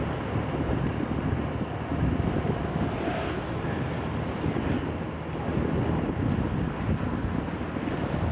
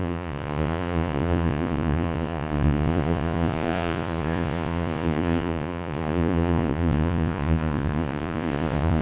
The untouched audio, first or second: first